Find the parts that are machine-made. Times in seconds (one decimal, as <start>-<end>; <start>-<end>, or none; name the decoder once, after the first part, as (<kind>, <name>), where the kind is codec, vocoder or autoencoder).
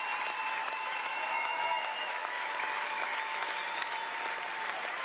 0.6-3.6 (autoencoder, DAC-VAE)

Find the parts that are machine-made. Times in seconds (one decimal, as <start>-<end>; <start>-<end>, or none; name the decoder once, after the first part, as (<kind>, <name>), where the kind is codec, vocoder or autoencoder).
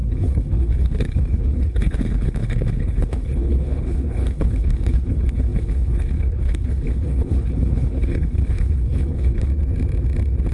0.0-9.5 (codec, HILCodec)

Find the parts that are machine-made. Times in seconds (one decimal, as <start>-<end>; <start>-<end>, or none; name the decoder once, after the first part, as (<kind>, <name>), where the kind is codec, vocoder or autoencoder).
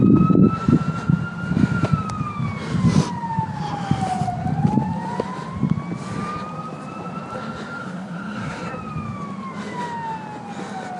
7.8-8.6 (codec, SNAC)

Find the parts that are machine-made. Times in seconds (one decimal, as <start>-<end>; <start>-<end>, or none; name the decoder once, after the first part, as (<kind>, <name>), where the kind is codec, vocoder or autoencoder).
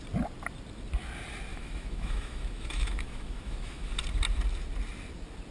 1.5-3.9 (autoencoder, DAC-VAE)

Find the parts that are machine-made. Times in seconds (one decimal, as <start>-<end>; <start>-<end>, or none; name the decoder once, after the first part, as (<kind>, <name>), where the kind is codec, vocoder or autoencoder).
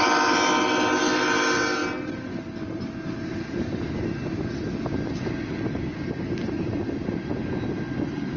none